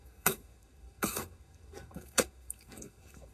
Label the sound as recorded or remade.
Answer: remade